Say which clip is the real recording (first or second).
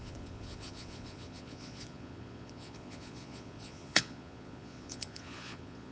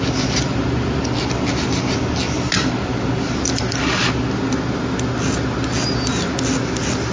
second